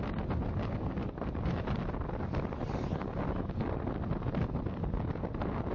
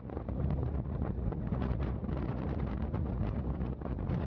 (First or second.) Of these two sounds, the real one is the first